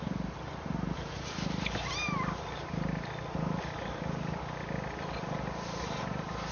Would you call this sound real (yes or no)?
yes